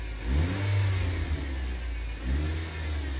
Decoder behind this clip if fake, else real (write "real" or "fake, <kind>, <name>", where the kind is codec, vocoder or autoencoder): real